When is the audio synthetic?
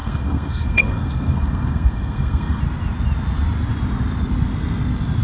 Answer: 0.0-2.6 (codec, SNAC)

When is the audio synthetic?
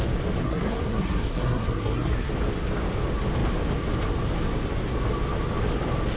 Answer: 0.4-2.3 (codec, SNAC)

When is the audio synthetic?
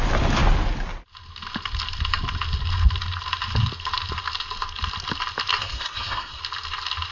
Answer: 5.6-6.4 (codec, SNAC)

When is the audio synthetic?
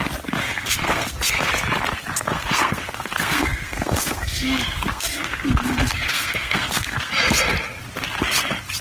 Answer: 0.4-1.5 (codec, SNAC); 2.3-7.1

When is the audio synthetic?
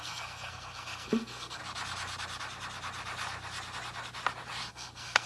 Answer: 0.0-1.6 (codec, SNAC); 4.7-5.3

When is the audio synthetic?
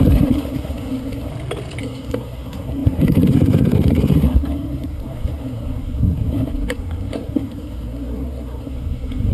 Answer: 0.0-1.3 (codec, SNAC); 1.8-9.3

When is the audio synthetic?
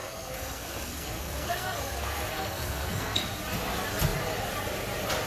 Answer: 0.0-3.2 (codec, SNAC)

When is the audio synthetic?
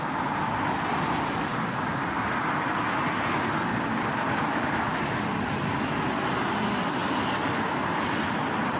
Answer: none